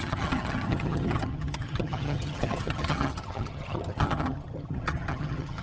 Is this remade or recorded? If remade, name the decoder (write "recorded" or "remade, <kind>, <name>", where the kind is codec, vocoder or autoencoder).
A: remade, vocoder, HiFi-GAN